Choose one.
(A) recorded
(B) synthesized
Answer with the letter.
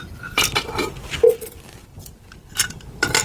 B